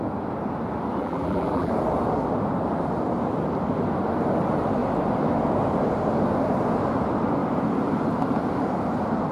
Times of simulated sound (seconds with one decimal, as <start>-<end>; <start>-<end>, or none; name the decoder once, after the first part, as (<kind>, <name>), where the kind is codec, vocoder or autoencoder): 1.0-1.7 (vocoder, BigVGAN v2)